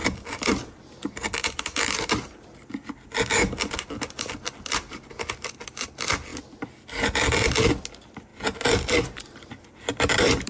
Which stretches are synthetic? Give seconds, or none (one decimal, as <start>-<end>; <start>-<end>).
none

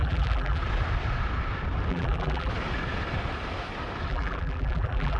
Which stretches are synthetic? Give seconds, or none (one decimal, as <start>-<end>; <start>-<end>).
0.0-0.6; 1.9-2.5; 4.1-5.2

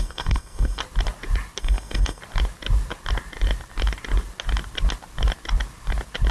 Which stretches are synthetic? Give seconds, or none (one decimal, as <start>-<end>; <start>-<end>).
0.0-0.8; 1.6-2.2

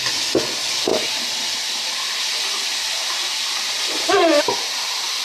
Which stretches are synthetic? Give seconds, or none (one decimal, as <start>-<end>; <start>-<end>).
0.9-2.2; 3.0-5.2

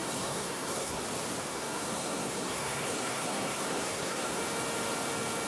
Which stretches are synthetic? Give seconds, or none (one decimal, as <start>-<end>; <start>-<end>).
0.0-1.0; 1.5-4.4